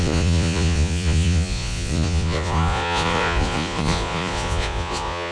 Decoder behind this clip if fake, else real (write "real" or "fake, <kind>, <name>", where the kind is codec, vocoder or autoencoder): fake, vocoder, Vocos